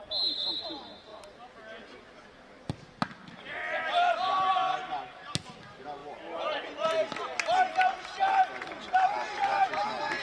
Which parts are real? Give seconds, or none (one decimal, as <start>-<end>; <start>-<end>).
0.0-10.2